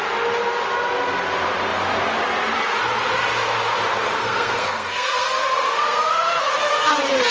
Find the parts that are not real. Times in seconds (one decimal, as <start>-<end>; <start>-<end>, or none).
4.2-6.3